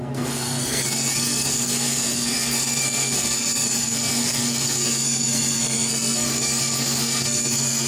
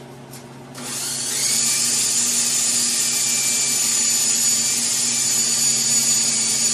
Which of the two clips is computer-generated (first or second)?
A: first